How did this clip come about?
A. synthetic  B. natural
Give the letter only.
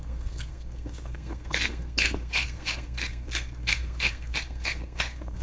A